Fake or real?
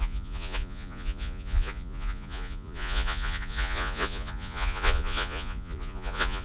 fake